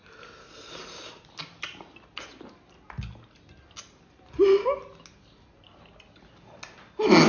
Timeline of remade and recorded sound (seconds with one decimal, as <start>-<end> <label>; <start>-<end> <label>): 0.0-7.3 recorded